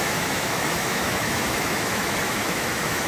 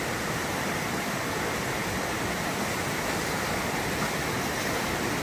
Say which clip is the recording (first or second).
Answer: second